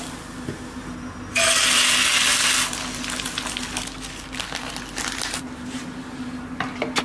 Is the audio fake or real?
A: real